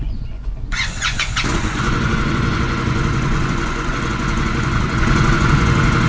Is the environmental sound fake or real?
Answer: fake